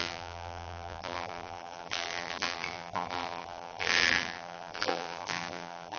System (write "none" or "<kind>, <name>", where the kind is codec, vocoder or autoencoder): vocoder, BigVGAN v2